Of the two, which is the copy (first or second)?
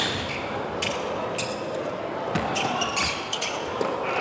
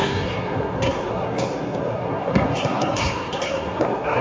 second